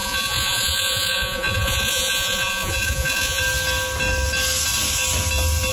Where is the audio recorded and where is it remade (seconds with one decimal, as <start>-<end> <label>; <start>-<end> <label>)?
0.0-3.4 remade; 3.4-5.7 recorded